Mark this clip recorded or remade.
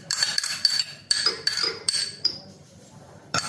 remade